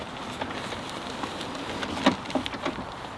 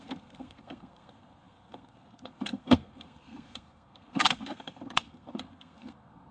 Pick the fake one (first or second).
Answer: second